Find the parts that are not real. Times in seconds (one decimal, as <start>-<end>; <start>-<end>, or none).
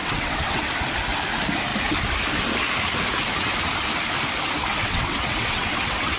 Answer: 0.0-0.7; 4.8-6.2